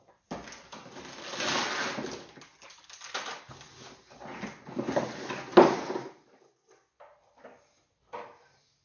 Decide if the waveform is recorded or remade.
recorded